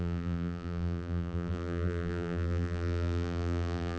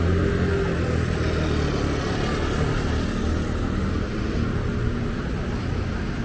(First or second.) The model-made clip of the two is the first